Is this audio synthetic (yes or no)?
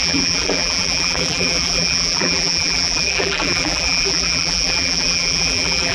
yes